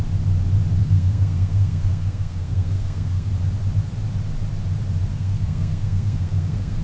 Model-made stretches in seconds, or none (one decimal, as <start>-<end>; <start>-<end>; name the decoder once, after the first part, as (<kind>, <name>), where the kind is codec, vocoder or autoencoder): 0.8-3.3 (codec, SNAC); 5.1-6.8